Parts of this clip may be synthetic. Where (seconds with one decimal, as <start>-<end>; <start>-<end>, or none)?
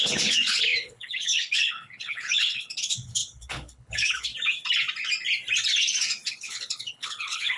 0.0-4.3; 6.3-7.6